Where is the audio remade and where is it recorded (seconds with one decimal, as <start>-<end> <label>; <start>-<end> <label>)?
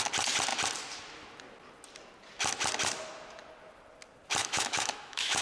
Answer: 0.0-4.4 recorded; 4.4-5.4 remade